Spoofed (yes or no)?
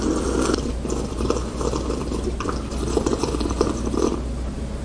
no